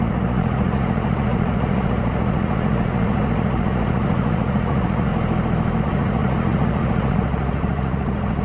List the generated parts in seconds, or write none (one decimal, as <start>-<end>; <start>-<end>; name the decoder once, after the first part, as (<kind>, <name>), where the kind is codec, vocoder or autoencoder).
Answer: 0.0-5.1 (vocoder, Vocos); 5.8-8.4